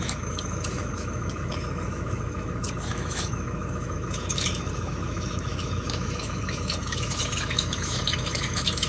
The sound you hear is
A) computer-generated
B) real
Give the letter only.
A